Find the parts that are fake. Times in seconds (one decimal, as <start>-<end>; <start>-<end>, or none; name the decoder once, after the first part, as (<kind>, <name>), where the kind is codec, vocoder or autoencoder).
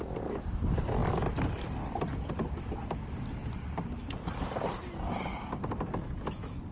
3.4-4.7 (vocoder, BigVGAN v2)